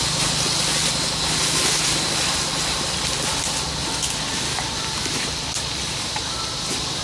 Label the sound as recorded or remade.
recorded